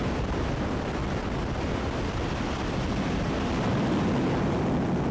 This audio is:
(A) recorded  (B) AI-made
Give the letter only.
A